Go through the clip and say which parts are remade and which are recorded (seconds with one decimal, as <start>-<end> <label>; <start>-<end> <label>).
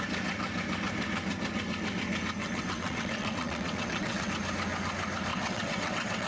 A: 0.0-2.4 recorded; 2.4-4.3 remade; 4.3-5.3 recorded; 5.3-6.3 remade